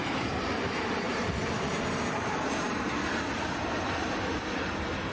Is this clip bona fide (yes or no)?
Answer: no